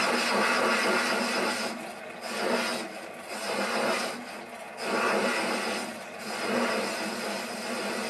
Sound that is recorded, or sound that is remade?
recorded